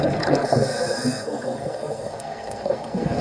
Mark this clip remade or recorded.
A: remade